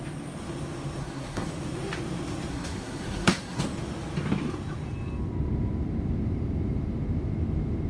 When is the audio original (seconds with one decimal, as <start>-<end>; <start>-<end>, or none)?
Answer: 0.0-1.0; 1.5-2.5; 3.6-7.9